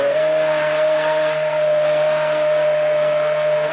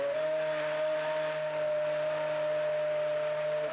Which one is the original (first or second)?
second